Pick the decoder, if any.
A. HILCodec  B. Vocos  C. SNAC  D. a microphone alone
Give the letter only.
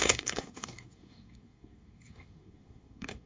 C